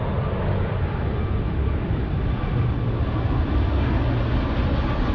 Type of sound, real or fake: real